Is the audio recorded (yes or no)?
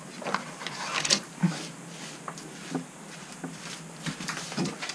yes